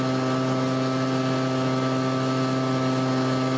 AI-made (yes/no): no